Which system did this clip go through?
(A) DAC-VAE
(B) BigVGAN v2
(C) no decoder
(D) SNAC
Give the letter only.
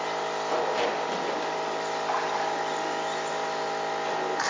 C